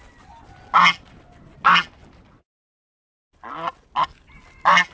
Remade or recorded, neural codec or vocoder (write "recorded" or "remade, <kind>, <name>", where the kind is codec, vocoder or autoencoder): recorded